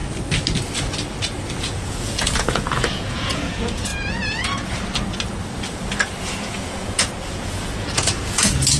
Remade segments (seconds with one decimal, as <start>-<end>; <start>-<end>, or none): 1.6-3.9; 6.2-8.8